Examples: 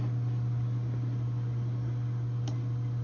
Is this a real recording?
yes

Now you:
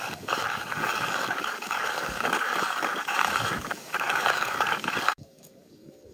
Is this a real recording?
no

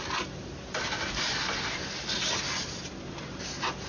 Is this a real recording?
no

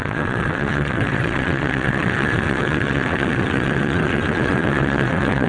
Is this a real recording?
no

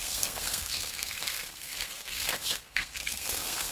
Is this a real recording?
no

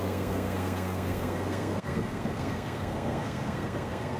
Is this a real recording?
no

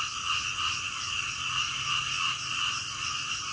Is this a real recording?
yes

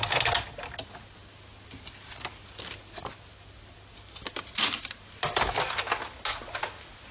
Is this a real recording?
yes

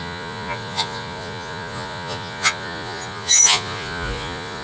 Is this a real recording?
no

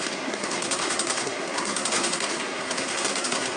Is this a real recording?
no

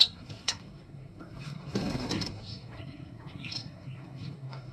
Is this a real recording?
no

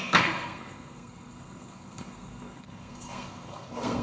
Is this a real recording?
no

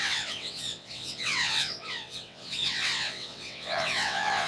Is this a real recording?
no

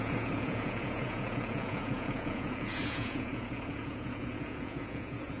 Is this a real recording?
no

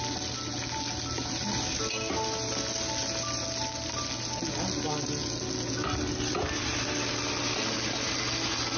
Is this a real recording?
yes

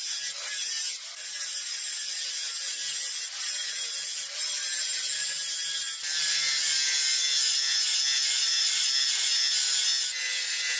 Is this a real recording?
yes